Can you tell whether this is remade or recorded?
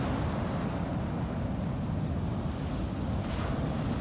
recorded